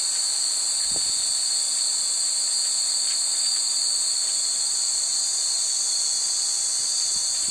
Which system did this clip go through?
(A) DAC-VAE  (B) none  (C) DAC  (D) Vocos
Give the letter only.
B